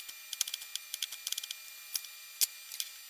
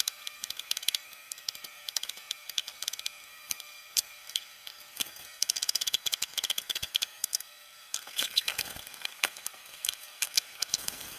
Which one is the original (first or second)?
first